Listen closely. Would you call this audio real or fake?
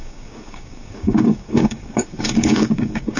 fake